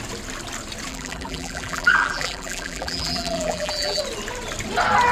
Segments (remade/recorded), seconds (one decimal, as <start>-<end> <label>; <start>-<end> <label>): 0.0-0.9 recorded; 0.9-4.0 remade; 4.0-5.1 recorded